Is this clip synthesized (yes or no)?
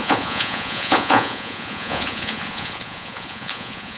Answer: yes